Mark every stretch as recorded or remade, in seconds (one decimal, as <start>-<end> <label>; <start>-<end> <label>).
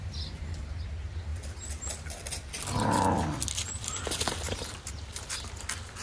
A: 0.0-6.0 recorded